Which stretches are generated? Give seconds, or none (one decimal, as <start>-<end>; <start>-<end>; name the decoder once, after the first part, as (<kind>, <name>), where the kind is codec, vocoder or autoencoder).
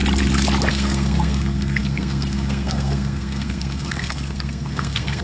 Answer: 0.7-5.2 (codec, SNAC)